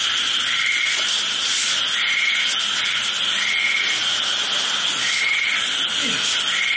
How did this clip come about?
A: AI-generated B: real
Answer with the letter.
B